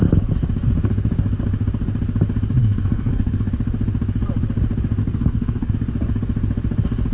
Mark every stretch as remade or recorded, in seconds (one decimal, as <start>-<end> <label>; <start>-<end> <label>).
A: 0.0-2.6 recorded; 2.6-3.5 remade; 3.5-5.0 recorded; 5.0-5.7 remade; 5.7-7.1 recorded